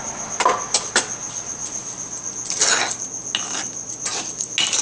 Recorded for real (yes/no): yes